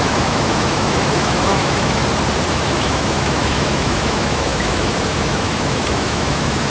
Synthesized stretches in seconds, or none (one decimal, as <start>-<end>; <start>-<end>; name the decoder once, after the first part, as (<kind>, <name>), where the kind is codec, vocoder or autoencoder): 0.0-2.0 (autoencoder, DAC-VAE); 2.5-6.7